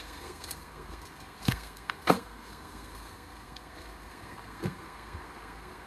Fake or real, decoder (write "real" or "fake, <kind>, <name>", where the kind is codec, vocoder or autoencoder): fake, codec, SNAC